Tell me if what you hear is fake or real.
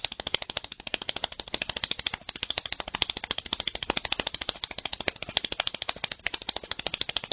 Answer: real